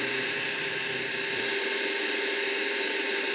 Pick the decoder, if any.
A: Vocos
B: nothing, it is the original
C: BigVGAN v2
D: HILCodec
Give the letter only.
C